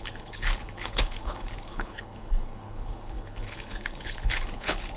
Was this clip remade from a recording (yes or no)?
yes